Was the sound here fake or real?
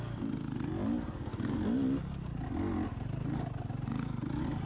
real